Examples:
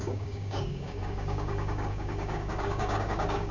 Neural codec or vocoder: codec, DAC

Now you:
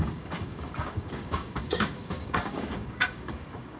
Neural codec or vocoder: codec, DAC